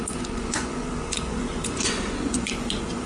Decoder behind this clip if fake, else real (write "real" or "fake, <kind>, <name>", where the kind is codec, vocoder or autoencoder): fake, vocoder, Vocos